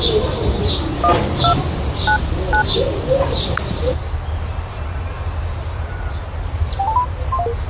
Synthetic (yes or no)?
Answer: no